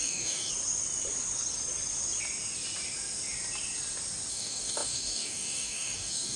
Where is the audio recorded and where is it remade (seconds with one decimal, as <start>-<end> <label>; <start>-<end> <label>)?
0.0-0.5 remade; 0.5-4.3 recorded; 4.3-6.4 remade